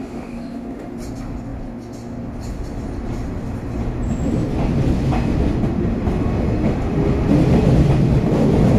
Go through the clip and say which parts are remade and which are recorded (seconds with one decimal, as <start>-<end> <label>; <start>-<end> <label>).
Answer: 0.0-0.9 remade; 0.9-8.8 recorded